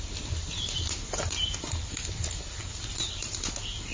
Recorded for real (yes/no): yes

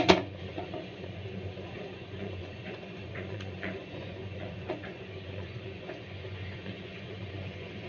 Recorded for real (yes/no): no